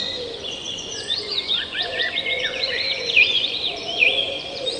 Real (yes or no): no